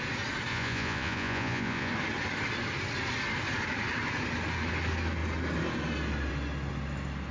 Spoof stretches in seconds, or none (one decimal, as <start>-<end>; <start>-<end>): 0.5-1.9